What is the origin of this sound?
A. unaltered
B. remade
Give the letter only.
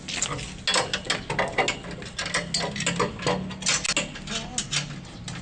A